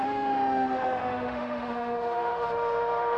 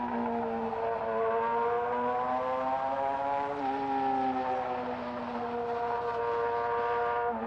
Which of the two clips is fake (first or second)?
first